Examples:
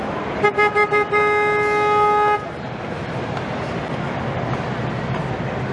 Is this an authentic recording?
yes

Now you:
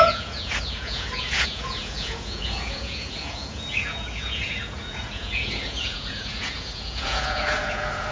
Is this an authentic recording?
no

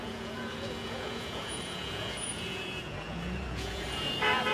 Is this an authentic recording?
no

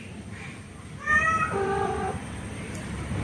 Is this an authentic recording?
yes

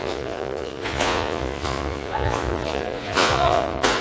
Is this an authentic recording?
no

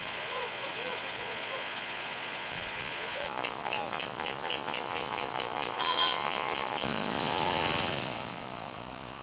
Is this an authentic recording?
no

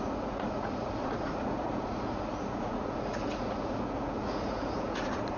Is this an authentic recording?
no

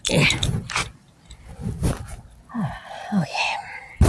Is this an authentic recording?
yes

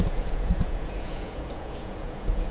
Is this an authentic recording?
no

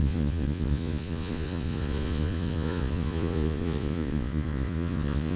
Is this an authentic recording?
no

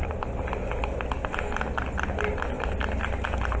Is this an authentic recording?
yes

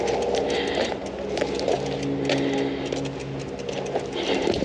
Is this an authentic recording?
yes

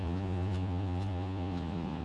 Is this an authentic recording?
no